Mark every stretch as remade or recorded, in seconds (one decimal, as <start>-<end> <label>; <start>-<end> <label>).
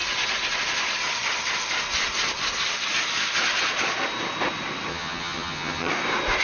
0.0-4.9 recorded; 4.9-5.9 remade; 5.9-6.4 recorded